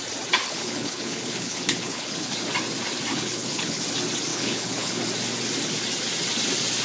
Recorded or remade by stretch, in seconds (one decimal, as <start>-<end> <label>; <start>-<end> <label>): 0.0-0.4 recorded; 0.4-2.3 remade; 2.3-3.1 recorded; 3.1-3.8 remade; 3.8-4.3 recorded; 4.3-5.0 remade; 5.0-6.8 recorded